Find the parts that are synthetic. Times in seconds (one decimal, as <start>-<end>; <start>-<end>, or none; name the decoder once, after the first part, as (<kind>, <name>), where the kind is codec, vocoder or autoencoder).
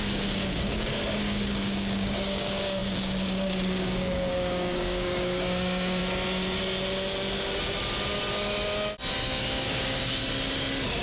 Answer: 0.0-6.0 (codec, DAC); 9.1-10.2